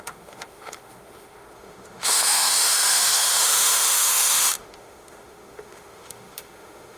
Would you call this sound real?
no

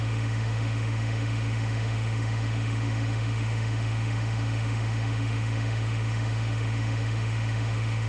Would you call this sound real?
no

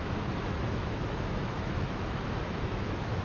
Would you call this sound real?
no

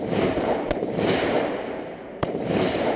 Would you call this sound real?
no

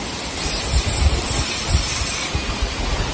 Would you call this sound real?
yes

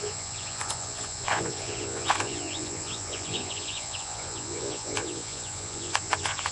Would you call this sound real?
no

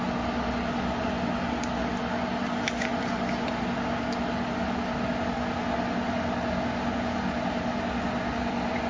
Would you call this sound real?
yes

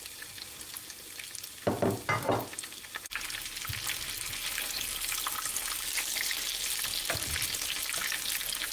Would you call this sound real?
yes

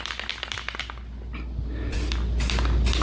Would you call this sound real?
yes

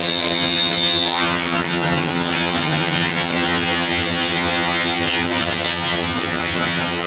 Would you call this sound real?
no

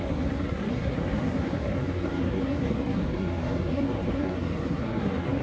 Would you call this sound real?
no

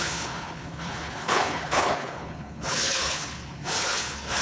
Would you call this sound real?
no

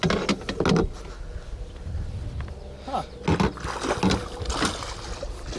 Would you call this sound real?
yes